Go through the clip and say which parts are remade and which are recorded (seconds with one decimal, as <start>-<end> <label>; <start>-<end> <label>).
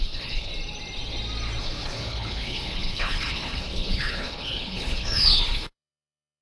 0.0-0.5 remade; 0.5-1.6 recorded; 1.6-6.4 remade